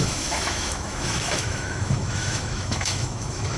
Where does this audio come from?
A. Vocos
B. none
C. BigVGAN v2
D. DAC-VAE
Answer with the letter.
D